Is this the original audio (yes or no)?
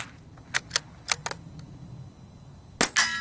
yes